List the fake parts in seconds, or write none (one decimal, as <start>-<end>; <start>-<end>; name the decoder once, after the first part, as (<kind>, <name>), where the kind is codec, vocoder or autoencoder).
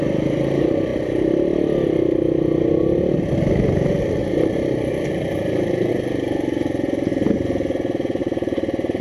4.2-5.9 (vocoder, BigVGAN v2); 8.2-9.0